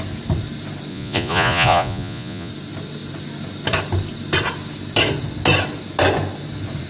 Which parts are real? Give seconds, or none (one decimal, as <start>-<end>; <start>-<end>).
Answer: 0.0-0.9; 2.5-6.9